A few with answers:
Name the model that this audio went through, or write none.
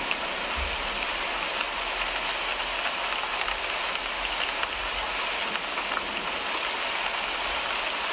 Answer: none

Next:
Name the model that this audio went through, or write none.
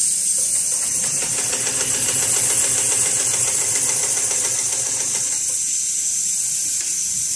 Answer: vocoder, BigVGAN v2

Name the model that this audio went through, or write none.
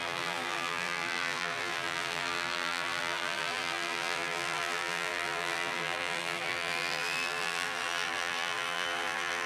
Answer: vocoder, BigVGAN v2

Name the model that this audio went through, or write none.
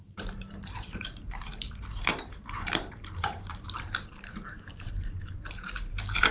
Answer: vocoder, BigVGAN v2